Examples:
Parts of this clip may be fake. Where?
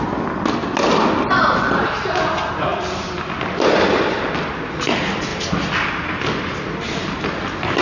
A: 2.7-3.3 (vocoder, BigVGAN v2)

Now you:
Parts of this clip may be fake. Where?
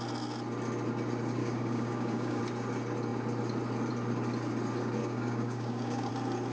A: 1.4-2.4 (codec, DAC); 5.0-6.1